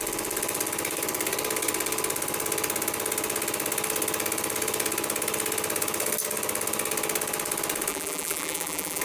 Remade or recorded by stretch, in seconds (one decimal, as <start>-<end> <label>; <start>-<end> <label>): 0.0-7.9 recorded; 7.9-9.0 remade